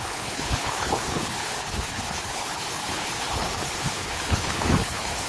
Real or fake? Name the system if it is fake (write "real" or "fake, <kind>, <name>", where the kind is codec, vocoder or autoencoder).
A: fake, codec, HILCodec